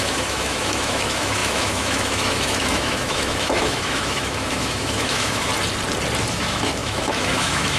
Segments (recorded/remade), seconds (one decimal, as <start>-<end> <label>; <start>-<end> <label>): 0.0-5.5 remade; 5.5-6.3 recorded; 6.3-7.8 remade